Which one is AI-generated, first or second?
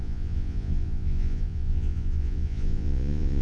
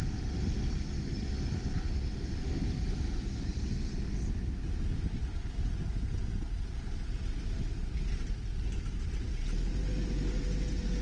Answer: first